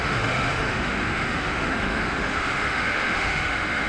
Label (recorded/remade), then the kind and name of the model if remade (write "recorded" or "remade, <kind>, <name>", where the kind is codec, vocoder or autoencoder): remade, autoencoder, DAC-VAE